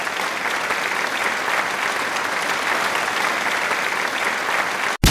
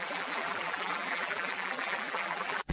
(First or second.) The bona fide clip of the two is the first